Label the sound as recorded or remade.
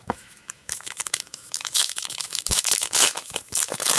remade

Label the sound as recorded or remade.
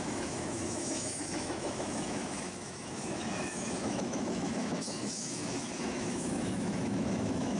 remade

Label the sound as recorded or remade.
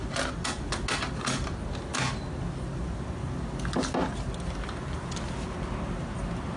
recorded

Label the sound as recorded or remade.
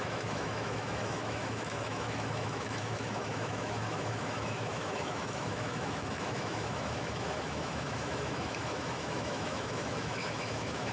remade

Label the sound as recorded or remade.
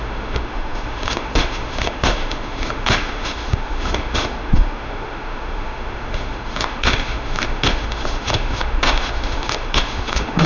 remade